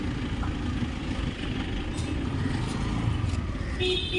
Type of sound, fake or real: real